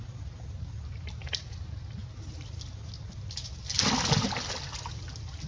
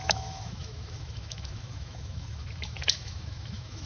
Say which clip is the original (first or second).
first